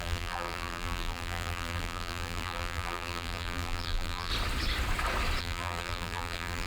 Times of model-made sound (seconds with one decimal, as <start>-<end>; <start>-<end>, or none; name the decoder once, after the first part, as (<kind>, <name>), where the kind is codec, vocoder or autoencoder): 0.0-4.3 (vocoder, BigVGAN v2); 5.4-6.7